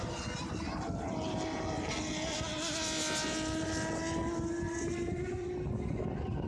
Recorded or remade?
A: recorded